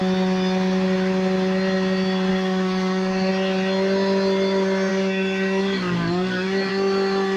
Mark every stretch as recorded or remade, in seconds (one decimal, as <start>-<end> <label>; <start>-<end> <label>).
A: 0.0-2.3 recorded; 2.3-3.3 remade; 3.3-4.9 recorded; 4.9-6.7 remade; 6.7-7.4 recorded